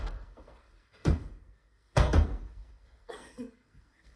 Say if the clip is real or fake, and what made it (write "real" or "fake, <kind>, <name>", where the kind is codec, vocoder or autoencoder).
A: fake, codec, SNAC